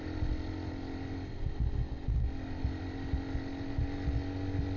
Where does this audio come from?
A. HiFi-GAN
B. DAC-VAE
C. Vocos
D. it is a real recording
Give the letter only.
D